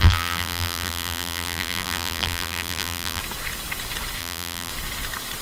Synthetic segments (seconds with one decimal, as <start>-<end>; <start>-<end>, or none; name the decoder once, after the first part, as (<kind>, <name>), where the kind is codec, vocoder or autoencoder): 0.0-3.2 (vocoder, BigVGAN v2); 4.2-4.7

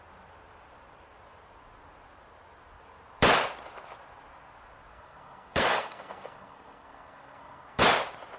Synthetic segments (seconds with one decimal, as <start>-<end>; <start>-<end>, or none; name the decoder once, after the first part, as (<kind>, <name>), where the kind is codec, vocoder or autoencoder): 4.9-7.8 (codec, SNAC)

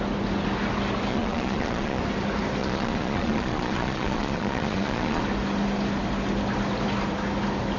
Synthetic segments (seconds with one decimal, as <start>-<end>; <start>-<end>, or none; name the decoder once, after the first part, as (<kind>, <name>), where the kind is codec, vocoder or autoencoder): 1.1-2.0 (vocoder, Vocos); 2.6-5.2

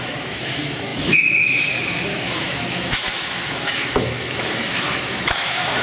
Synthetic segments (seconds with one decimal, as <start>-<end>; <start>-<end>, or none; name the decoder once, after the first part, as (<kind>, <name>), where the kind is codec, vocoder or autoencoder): 0.0-5.8 (autoencoder, DAC-VAE)

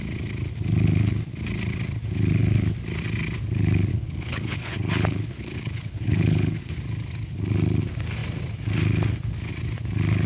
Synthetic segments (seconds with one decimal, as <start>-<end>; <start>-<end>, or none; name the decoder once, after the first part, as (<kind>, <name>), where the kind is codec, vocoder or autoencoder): 3.9-6.7 (codec, HILCodec)

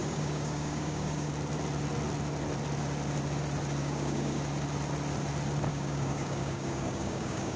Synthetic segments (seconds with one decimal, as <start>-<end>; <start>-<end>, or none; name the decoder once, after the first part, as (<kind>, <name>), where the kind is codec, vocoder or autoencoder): 0.0-1.3 (codec, DAC); 3.8-4.4; 5.7-7.6